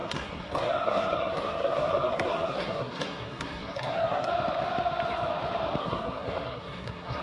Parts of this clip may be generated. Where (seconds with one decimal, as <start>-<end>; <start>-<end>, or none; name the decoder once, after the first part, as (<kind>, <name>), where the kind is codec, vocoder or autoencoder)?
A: 0.0-4.3 (codec, SNAC); 5.8-7.2